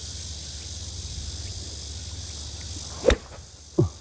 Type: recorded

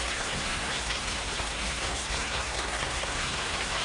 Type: remade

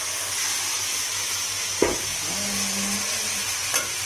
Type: recorded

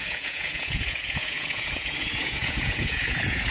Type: remade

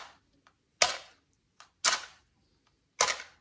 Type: recorded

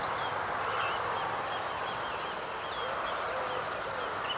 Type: recorded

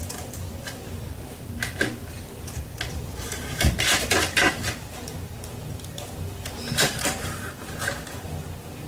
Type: remade